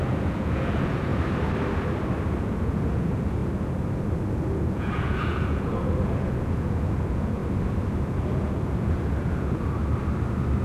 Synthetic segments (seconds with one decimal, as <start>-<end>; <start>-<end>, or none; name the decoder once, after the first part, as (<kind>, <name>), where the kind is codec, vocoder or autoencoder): 0.0-1.1 (vocoder, Vocos); 2.4-3.4; 4.3-7.4; 8.1-9.8

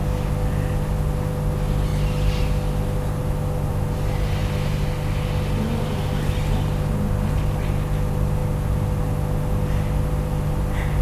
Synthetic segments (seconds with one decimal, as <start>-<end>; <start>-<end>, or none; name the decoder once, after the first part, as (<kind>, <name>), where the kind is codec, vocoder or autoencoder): 3.7-4.4 (vocoder, BigVGAN v2)

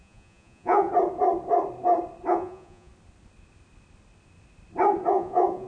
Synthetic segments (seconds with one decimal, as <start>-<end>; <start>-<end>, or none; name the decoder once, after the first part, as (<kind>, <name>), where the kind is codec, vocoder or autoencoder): 0.0-0.9 (vocoder, Vocos); 2.3-2.9; 5.1-5.7

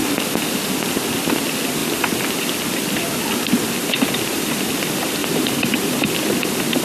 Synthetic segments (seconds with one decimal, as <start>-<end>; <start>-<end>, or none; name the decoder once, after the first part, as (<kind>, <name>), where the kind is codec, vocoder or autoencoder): 5.2-6.0 (vocoder, BigVGAN v2)

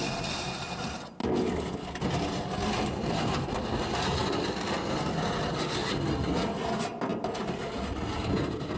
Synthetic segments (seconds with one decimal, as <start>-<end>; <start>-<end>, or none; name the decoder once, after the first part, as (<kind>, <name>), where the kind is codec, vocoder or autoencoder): none

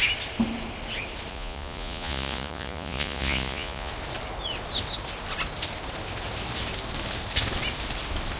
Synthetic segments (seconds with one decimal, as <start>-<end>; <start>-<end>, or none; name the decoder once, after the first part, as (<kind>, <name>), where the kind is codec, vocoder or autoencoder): 1.3-3.9 (vocoder, Vocos)

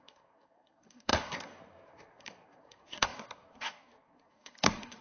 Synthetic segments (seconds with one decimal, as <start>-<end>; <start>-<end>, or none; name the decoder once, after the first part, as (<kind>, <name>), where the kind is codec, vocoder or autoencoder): 0.0-5.0 (codec, SNAC)

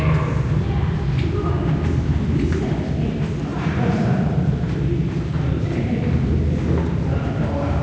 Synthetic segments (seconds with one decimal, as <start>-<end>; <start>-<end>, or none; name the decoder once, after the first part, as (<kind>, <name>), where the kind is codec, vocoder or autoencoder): 3.5-5.6 (vocoder, BigVGAN v2)